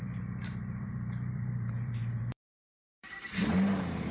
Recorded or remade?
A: remade